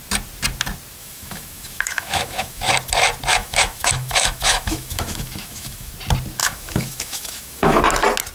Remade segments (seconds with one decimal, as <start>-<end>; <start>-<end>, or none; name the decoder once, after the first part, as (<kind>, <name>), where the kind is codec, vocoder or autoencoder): 1.0-2.7 (autoencoder, DAC-VAE); 3.3-5.9; 6.4-7.8

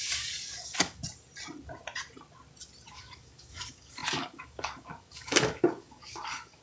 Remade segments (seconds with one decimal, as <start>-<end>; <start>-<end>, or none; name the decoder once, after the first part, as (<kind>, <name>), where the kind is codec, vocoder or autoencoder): 0.0-1.0 (codec, DAC); 2.9-6.6

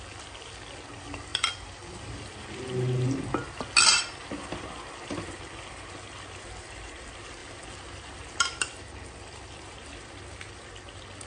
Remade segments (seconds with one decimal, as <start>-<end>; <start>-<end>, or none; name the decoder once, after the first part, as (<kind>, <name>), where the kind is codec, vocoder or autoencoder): 1.3-2.4 (vocoder, BigVGAN v2)

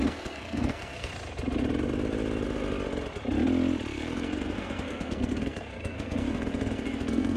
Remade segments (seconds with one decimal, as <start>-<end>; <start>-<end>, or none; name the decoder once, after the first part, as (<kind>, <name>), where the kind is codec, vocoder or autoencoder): 0.0-1.1 (codec, SNAC); 3.9-7.4

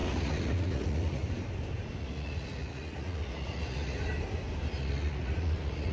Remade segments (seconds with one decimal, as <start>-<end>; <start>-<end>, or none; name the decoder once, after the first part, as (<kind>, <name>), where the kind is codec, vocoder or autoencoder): 0.0-1.2 (vocoder, Vocos); 2.0-4.0; 4.8-5.9